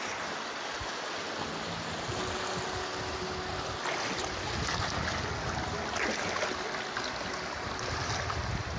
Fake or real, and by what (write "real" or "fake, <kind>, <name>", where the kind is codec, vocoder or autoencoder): real